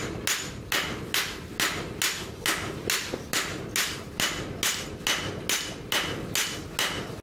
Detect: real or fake real